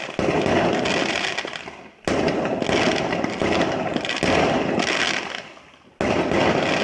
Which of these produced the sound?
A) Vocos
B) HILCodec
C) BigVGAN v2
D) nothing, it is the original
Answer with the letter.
D